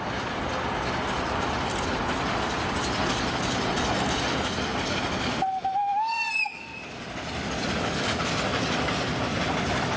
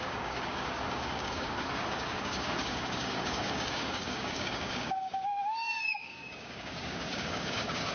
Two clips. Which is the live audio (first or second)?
first